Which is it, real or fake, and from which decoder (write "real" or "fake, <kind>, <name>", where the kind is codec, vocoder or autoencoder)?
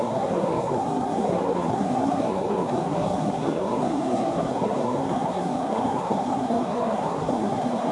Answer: fake, codec, SNAC